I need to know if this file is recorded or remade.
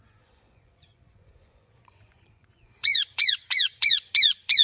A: remade